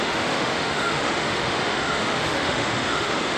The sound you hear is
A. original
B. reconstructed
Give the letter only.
B